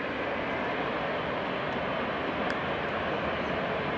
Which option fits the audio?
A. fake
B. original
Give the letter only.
B